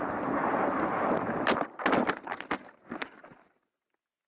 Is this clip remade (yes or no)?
no